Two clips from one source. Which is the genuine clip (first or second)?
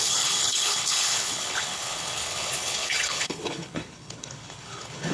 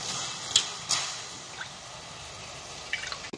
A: second